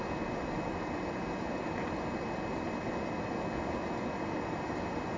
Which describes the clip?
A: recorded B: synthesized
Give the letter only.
A